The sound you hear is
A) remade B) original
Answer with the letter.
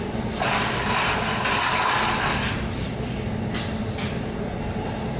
B